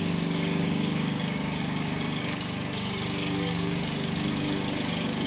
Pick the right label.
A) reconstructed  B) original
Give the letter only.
A